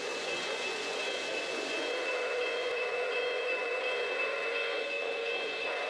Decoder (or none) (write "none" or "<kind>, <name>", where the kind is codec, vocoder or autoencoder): vocoder, Vocos